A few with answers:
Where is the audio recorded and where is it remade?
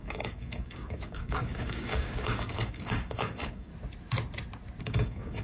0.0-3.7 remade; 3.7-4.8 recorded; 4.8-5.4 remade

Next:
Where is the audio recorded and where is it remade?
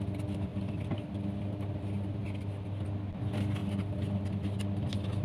0.0-0.5 recorded; 0.5-1.0 remade; 1.0-2.2 recorded; 2.2-3.1 remade; 3.1-5.2 recorded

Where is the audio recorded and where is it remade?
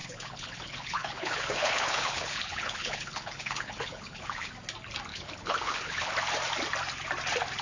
0.0-4.5 remade; 4.5-5.1 recorded; 5.1-6.1 remade; 6.1-7.6 recorded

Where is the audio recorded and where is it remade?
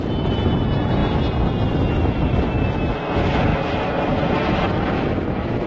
0.0-5.7 recorded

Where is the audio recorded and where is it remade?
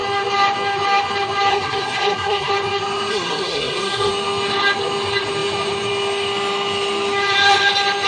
0.0-1.5 recorded; 1.5-2.5 remade; 2.5-3.1 recorded; 3.1-4.1 remade; 4.1-8.1 recorded